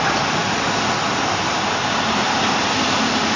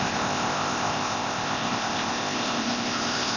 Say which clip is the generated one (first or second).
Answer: second